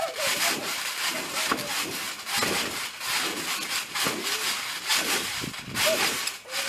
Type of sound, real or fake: real